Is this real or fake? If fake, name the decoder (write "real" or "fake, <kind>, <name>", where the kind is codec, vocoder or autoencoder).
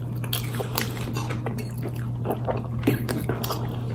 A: real